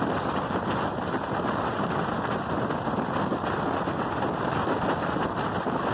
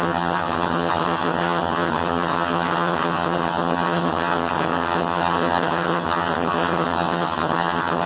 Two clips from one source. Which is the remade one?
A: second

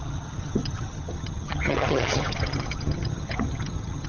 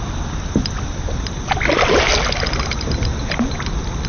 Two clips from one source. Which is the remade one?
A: first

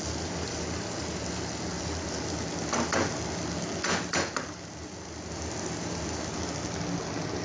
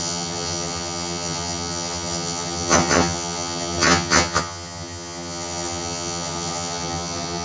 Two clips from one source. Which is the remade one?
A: second